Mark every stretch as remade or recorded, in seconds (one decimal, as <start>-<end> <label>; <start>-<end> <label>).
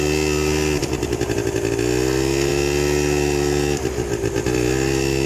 0.0-5.3 recorded